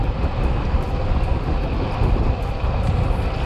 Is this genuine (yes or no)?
yes